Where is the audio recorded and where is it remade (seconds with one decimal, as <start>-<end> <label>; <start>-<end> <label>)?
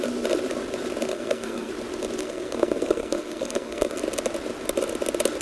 0.0-1.1 recorded; 1.1-1.7 remade; 1.7-2.2 recorded; 2.2-4.0 remade; 4.0-5.4 recorded